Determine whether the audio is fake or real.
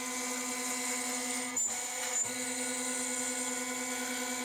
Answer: real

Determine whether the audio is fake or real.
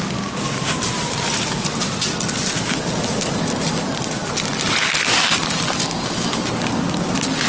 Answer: real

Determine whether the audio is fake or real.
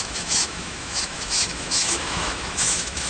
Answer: fake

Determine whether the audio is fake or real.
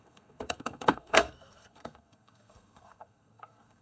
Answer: fake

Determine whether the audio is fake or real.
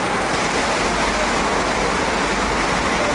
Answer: real